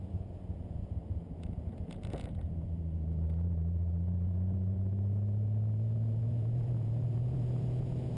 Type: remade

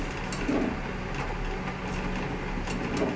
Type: recorded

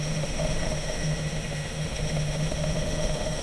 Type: remade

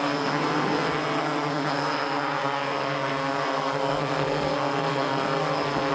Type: remade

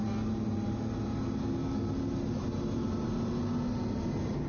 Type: recorded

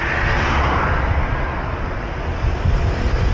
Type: recorded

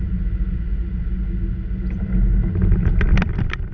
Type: recorded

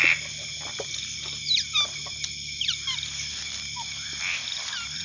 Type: recorded